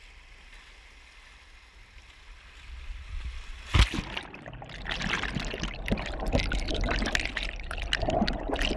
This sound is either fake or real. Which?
real